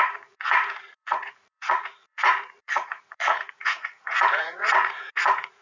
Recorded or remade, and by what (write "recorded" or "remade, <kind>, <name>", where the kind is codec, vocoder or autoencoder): remade, vocoder, Vocos